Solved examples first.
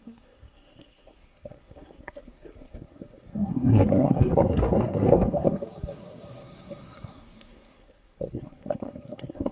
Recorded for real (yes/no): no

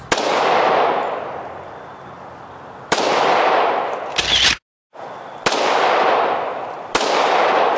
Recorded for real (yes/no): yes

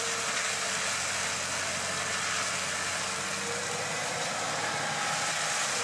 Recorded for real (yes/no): yes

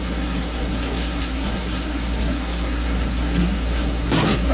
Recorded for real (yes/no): no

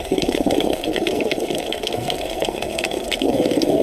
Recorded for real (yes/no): no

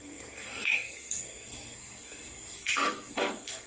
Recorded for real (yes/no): no